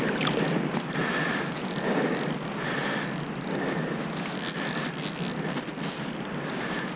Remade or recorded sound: recorded